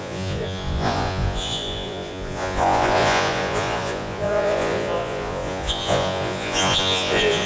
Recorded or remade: remade